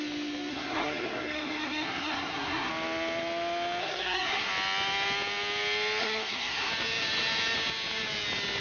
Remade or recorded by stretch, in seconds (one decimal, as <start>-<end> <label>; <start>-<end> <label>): 0.0-0.5 recorded; 0.5-2.7 remade; 2.7-3.8 recorded; 3.8-4.5 remade; 4.5-6.0 recorded; 6.0-6.7 remade; 6.7-8.6 recorded